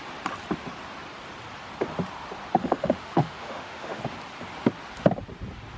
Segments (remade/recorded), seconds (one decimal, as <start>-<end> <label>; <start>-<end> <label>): 0.0-2.6 recorded; 2.6-4.0 remade; 4.0-5.8 recorded